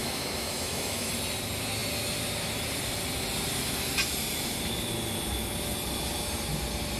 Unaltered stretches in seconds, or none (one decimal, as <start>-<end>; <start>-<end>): 1.1-7.0